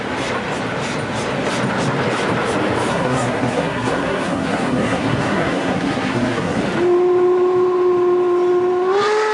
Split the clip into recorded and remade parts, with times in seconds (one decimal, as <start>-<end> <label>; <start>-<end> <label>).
0.0-2.9 recorded; 2.9-6.6 remade; 6.6-9.3 recorded